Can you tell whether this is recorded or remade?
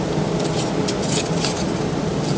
remade